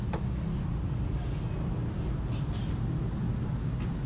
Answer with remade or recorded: recorded